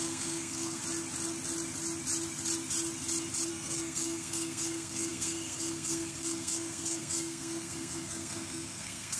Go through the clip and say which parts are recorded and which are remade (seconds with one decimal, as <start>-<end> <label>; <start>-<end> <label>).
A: 0.0-0.8 remade; 0.8-3.5 recorded; 3.5-9.2 remade